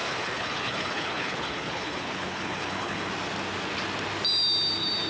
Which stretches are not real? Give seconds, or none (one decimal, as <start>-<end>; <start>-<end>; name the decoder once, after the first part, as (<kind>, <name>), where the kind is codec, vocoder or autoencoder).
0.0-3.1 (codec, HILCodec)